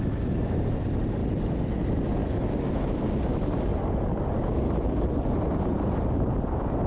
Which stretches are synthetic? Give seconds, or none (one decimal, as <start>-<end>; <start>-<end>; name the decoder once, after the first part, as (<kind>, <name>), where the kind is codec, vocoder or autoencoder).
2.2-3.0 (autoencoder, DAC-VAE)